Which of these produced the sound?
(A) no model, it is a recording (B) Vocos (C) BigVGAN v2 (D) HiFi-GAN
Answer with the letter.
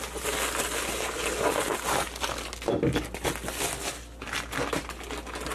A